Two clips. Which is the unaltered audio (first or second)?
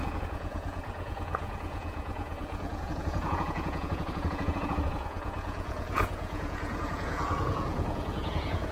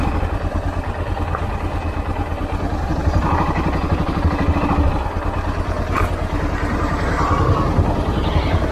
second